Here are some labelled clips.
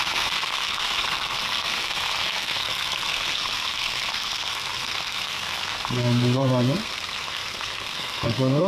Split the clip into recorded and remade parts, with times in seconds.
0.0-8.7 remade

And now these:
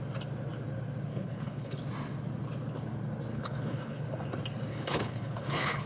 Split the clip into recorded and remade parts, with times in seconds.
0.0-1.1 recorded; 1.1-1.8 remade; 1.8-3.3 recorded; 3.3-4.0 remade; 4.0-4.7 recorded; 4.7-5.9 remade

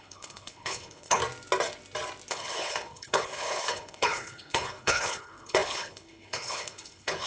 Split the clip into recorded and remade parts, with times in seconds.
0.0-1.2 remade; 1.2-2.3 recorded; 2.3-7.3 remade

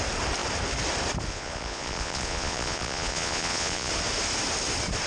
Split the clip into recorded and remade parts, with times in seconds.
0.0-1.3 recorded; 1.3-3.9 remade; 3.9-5.1 recorded

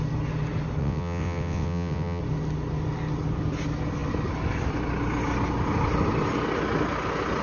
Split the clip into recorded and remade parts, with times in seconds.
0.0-0.8 recorded; 0.8-2.2 remade; 2.2-7.4 recorded

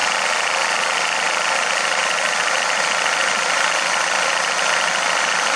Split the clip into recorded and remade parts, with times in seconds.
0.0-5.6 recorded